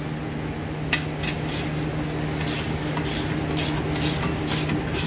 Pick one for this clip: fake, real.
real